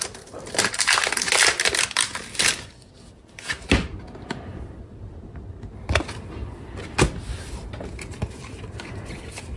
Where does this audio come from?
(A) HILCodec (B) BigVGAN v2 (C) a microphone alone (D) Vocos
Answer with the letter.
C